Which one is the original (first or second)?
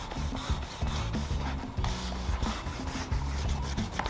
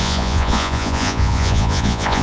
first